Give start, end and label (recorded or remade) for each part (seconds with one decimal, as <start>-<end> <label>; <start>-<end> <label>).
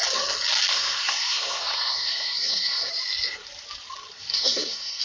0.0-0.7 recorded; 0.7-2.9 remade; 2.9-4.3 recorded; 4.3-5.0 remade